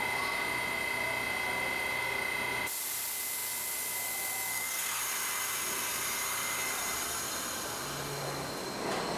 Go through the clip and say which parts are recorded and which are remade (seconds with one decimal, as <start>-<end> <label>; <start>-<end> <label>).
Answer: 0.0-4.5 recorded; 4.5-5.0 remade; 5.0-9.2 recorded